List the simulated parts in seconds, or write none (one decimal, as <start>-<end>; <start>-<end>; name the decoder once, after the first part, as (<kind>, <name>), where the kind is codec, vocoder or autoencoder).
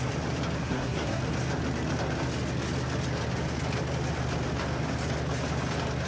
0.6-1.2 (codec, SNAC)